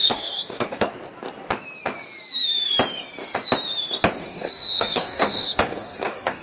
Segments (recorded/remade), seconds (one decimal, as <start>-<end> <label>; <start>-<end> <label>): 0.0-0.9 remade; 0.9-4.2 recorded; 4.2-6.4 remade